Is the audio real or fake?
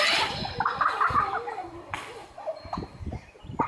real